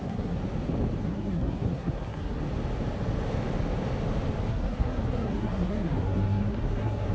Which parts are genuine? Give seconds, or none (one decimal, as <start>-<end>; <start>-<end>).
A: 0.4-1.0; 2.4-4.5